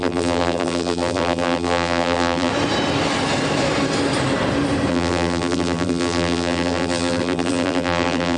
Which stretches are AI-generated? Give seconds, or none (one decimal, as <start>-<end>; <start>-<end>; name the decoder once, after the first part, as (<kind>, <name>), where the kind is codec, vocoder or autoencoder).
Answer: 0.0-2.5 (vocoder, BigVGAN v2); 4.9-8.4